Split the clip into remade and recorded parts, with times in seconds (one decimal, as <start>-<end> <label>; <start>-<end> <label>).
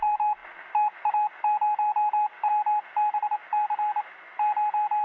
0.0-5.0 recorded